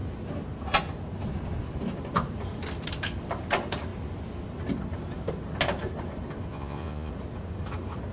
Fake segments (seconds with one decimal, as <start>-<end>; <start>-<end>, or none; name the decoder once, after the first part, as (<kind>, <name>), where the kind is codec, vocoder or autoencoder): 6.5-7.1 (vocoder, Vocos)